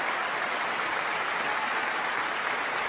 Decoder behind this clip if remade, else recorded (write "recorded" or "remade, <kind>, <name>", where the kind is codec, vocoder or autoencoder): recorded